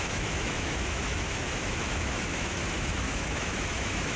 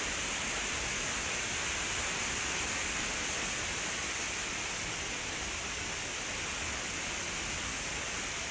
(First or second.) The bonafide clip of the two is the second